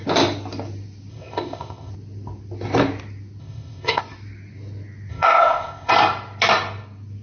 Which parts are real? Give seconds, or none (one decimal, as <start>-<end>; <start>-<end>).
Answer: 0.0-1.1; 1.9-3.4; 4.0-5.1; 5.9-7.2